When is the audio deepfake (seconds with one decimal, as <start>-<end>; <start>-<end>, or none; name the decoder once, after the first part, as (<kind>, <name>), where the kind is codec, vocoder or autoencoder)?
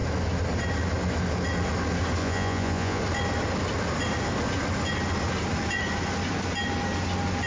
2.2-3.0 (vocoder, Vocos)